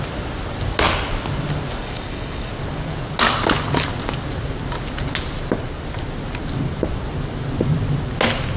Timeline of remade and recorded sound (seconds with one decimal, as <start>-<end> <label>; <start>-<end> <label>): 0.0-1.8 recorded; 1.8-2.5 remade; 2.5-8.6 recorded